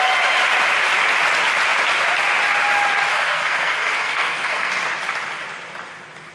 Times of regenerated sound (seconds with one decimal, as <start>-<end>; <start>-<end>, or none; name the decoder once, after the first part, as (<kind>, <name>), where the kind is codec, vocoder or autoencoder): 3.1-4.7 (codec, SNAC)